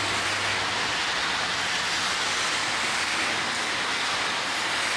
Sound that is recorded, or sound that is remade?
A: recorded